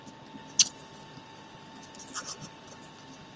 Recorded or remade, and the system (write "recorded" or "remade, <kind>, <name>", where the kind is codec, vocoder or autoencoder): recorded